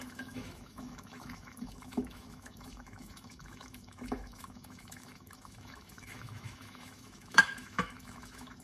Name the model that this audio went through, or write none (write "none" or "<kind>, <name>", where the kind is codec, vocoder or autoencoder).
autoencoder, DAC-VAE